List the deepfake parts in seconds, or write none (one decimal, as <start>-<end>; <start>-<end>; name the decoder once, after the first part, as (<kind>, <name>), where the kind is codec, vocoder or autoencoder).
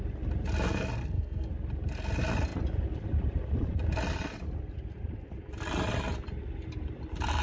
1.0-1.5 (codec, SNAC)